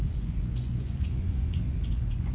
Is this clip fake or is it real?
fake